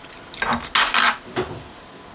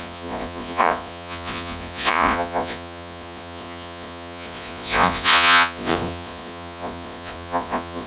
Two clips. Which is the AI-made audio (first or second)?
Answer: second